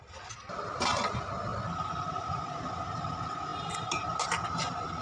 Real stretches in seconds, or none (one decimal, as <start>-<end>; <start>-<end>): 0.0-5.0